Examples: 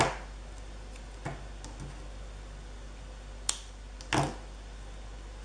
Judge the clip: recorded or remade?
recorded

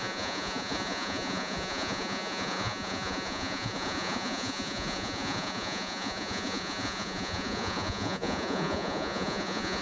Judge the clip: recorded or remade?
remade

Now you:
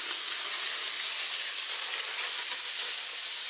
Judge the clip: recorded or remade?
recorded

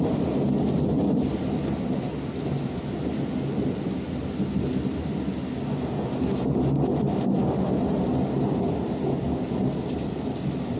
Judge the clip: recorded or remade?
recorded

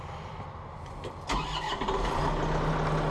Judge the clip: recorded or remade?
recorded